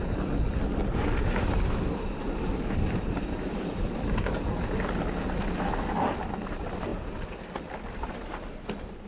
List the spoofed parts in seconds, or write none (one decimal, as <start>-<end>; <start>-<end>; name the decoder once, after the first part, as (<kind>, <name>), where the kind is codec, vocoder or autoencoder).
0.8-4.8 (vocoder, BigVGAN v2); 6.9-7.7